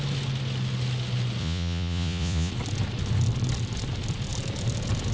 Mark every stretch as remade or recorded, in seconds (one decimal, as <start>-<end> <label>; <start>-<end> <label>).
0.0-1.4 recorded; 1.4-2.5 remade; 2.5-5.1 recorded